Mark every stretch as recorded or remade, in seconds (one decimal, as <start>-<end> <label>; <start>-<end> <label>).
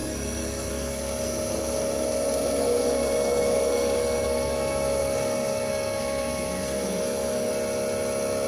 0.0-7.5 remade; 7.5-8.5 recorded